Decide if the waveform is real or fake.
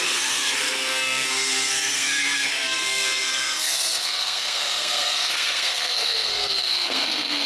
fake